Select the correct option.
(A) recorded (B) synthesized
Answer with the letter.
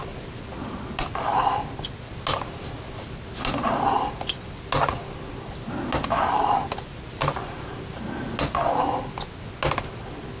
A